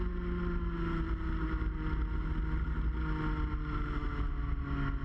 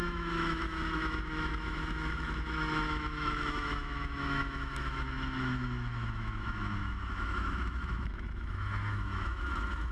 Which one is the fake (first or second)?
second